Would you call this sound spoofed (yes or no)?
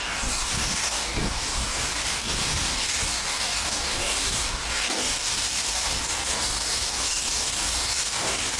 yes